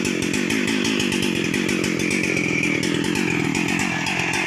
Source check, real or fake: real